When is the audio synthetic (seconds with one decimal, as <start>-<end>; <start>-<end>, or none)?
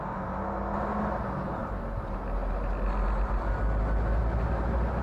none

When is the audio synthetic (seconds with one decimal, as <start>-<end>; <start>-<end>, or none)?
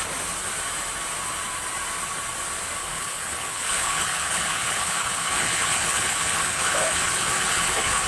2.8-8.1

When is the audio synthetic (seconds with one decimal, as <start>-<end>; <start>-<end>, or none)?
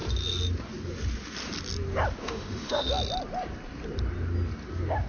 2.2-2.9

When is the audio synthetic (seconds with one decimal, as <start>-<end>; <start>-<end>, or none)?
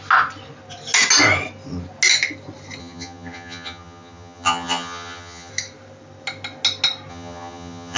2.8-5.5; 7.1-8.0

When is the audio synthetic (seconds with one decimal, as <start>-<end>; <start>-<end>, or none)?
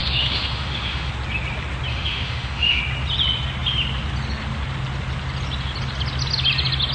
0.0-1.1; 1.9-2.8